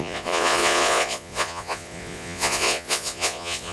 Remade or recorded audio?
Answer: remade